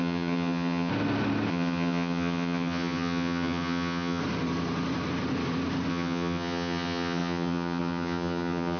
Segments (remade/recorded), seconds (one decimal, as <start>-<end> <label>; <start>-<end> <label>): 0.0-0.9 remade; 0.9-1.5 recorded; 1.5-4.2 remade; 4.2-5.9 recorded; 5.9-8.8 remade